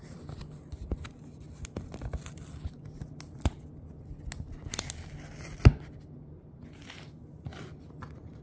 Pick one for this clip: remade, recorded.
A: recorded